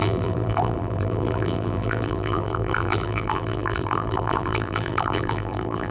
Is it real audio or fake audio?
fake